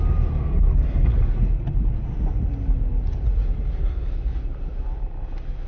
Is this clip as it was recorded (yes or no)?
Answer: yes